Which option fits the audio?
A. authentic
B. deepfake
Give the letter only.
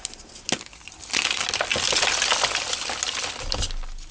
A